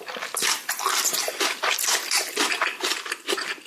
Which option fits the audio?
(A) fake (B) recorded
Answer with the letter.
A